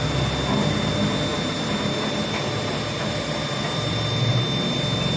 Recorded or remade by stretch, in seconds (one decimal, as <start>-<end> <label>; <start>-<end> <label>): 0.0-1.3 recorded; 1.3-4.4 remade; 4.4-5.2 recorded